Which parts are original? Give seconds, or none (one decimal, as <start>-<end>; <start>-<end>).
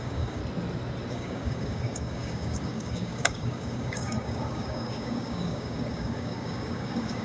0.4-1.1